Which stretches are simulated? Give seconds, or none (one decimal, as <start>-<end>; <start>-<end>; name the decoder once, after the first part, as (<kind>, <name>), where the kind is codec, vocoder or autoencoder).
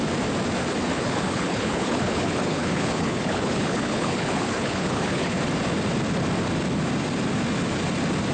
0.9-5.4 (codec, HILCodec)